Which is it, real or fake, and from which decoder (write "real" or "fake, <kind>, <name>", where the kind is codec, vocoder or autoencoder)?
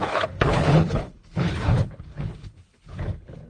fake, codec, HILCodec